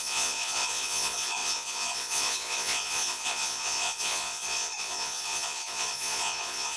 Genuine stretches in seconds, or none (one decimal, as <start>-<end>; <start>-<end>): none